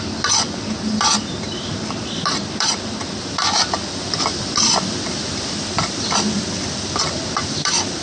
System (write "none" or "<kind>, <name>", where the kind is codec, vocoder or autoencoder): vocoder, BigVGAN v2